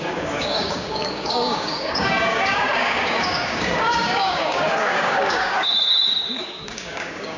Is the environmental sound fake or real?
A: fake